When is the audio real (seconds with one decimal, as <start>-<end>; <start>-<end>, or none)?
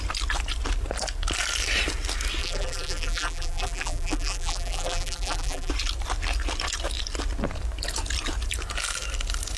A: 0.0-2.4; 5.7-9.6